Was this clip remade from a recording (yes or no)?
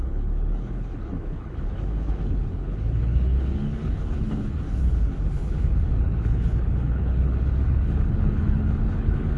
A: yes